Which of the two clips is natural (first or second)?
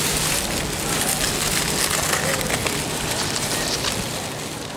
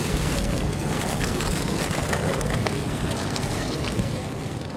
first